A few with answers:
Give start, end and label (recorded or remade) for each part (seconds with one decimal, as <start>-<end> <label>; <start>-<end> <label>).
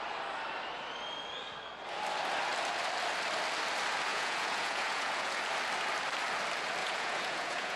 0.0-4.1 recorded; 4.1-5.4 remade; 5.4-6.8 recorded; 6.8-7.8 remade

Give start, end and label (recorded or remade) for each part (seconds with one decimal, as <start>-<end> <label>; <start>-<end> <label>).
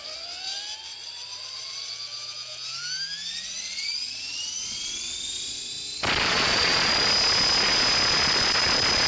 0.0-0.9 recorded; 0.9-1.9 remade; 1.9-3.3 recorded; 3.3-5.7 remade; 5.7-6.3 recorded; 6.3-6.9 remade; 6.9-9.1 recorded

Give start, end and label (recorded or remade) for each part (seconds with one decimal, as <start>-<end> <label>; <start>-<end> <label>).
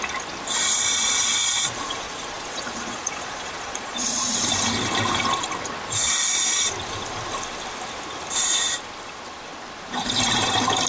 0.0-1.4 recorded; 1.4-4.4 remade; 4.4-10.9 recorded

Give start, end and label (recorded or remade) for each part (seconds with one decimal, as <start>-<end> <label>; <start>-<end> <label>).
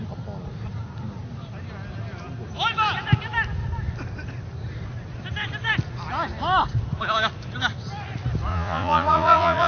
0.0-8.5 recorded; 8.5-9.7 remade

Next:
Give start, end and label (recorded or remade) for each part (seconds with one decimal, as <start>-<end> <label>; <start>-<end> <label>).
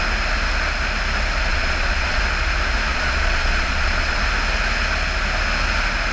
0.0-1.5 recorded; 1.5-2.2 remade; 2.2-2.9 recorded; 2.9-4.2 remade; 4.2-6.1 recorded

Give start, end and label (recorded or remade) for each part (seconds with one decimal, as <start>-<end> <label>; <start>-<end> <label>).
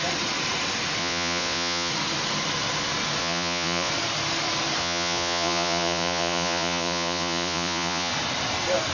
0.0-1.0 recorded; 1.0-1.9 remade; 1.9-3.2 recorded; 3.2-3.9 remade; 3.9-4.8 recorded; 4.8-8.1 remade; 8.1-8.9 recorded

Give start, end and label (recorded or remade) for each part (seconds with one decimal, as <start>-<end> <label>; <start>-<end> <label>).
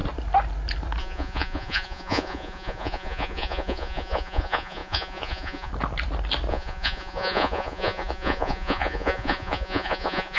0.0-1.0 recorded; 1.0-5.7 remade; 5.7-6.5 recorded; 6.5-10.4 remade